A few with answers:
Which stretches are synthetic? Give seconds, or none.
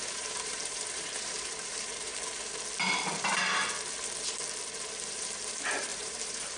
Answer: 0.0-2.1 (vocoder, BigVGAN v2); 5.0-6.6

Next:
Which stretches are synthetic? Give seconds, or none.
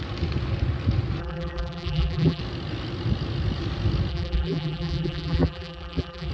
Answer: 1.2-2.4 (vocoder, BigVGAN v2); 4.1-6.3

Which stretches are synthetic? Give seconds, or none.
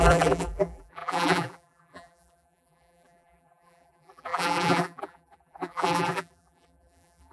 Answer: 0.0-7.3 (vocoder, BigVGAN v2)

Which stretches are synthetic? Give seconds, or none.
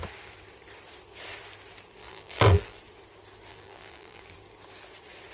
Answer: 2.0-2.8 (vocoder, BigVGAN v2); 3.5-4.2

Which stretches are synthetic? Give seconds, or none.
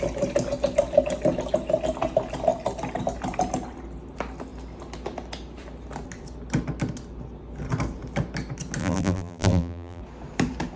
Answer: 8.8-10.0 (vocoder, BigVGAN v2)